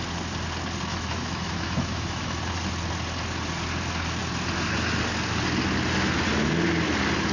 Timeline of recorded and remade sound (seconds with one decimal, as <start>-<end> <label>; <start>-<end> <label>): 0.0-0.9 recorded; 0.9-2.4 remade; 2.4-7.3 recorded